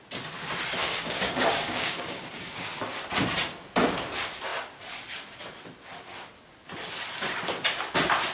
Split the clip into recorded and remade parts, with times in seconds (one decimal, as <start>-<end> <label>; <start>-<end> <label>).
0.0-0.8 recorded; 0.8-2.8 remade; 2.8-8.3 recorded